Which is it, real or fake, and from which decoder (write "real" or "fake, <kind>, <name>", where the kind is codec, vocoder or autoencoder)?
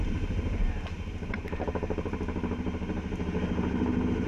fake, vocoder, BigVGAN v2